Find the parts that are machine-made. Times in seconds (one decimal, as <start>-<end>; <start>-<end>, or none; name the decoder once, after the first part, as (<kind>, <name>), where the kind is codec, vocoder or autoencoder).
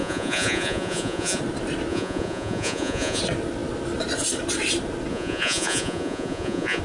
0.0-1.4 (vocoder, Vocos); 1.9-3.2; 5.1-6.8